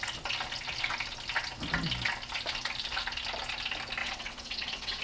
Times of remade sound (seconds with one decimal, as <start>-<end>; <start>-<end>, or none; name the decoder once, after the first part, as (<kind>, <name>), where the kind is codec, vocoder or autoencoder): 4.0-5.0 (vocoder, WaveNeXt)